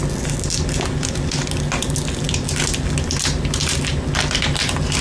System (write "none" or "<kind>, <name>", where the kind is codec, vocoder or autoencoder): none